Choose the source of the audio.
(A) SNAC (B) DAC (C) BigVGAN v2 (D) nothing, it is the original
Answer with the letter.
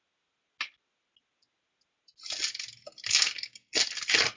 D